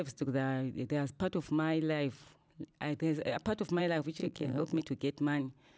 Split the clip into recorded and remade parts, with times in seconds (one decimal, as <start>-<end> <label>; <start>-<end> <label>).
0.0-4.2 recorded; 4.2-4.8 remade; 4.8-5.8 recorded